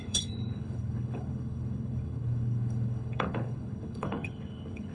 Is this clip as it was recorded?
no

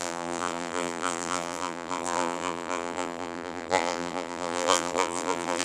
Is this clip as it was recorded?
no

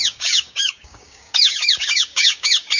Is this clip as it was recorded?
no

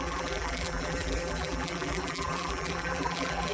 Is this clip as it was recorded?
no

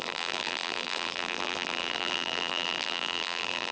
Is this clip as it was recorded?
no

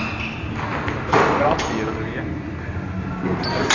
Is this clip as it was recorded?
yes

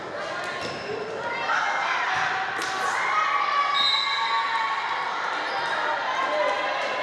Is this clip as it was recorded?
yes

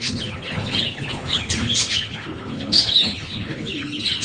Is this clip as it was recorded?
no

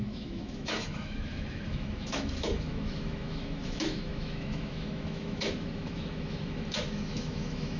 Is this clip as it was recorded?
no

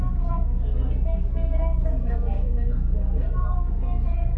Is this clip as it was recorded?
no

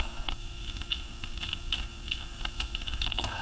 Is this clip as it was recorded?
no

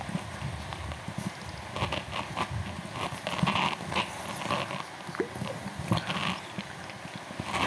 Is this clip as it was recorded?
yes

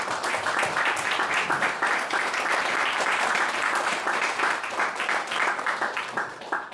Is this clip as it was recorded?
no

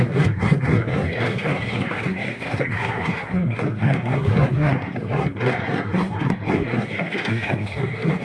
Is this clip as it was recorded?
no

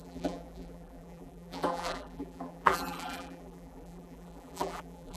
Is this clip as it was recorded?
no